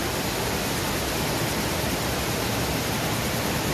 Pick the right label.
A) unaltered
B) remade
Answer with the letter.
A